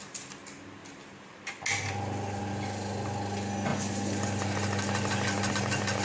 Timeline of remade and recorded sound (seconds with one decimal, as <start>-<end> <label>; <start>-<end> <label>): 0.0-6.0 recorded